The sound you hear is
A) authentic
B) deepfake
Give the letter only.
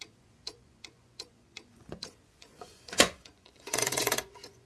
B